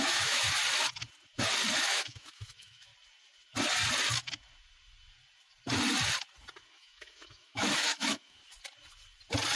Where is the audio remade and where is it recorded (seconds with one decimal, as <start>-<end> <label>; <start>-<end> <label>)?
0.0-0.6 remade; 0.6-1.8 recorded; 1.8-2.9 remade; 2.9-6.7 recorded; 6.7-8.4 remade; 8.4-9.6 recorded

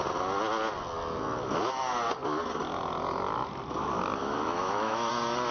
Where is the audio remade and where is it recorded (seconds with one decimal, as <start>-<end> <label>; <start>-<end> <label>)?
0.0-4.2 recorded; 4.2-5.1 remade; 5.1-5.5 recorded

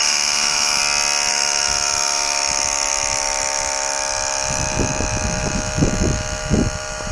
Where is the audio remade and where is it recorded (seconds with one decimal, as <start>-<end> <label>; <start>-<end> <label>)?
0.0-0.8 remade; 0.8-1.3 recorded; 1.3-7.1 remade

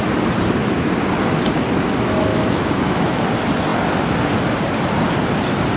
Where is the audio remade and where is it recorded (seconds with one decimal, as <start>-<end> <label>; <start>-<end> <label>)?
0.0-2.3 recorded; 2.3-3.2 remade; 3.2-5.8 recorded

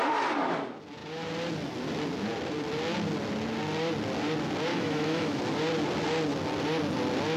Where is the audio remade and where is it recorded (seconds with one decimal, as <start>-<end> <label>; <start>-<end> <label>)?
0.0-4.7 recorded; 4.7-5.4 remade; 5.4-7.4 recorded